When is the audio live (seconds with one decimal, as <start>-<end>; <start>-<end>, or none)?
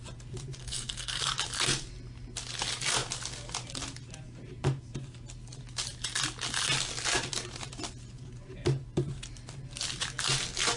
0.0-0.6; 1.2-10.8